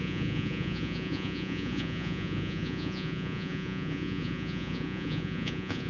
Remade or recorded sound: remade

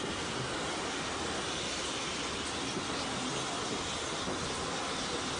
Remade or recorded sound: recorded